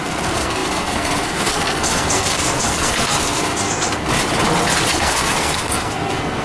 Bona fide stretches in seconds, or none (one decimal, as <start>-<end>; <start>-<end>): 4.1-4.9